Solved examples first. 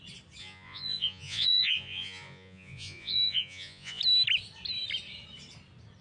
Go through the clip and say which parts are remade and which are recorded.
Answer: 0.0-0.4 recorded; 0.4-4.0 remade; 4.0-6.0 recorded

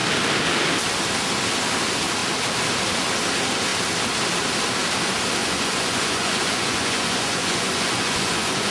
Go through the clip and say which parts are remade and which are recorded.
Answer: 0.0-5.4 recorded; 5.4-8.7 remade

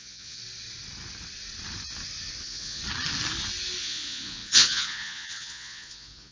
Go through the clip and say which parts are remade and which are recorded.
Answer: 0.0-0.4 remade; 0.4-2.4 recorded; 2.4-2.8 remade; 2.8-3.8 recorded; 3.8-6.3 remade